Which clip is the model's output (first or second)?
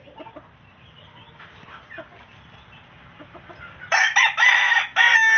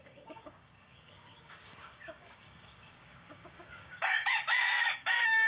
second